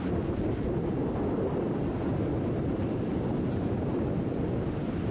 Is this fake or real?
real